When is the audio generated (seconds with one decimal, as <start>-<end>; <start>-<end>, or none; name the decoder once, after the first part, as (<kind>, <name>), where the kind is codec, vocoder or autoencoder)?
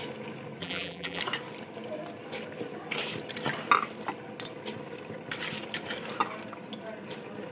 0.6-1.2 (vocoder, BigVGAN v2)